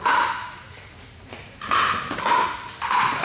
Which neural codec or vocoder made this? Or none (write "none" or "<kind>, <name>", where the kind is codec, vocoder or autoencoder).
none